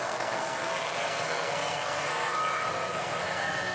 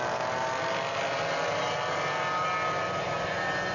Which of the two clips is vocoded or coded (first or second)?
first